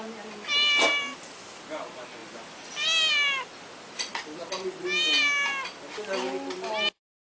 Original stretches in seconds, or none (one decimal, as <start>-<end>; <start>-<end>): 0.0-7.2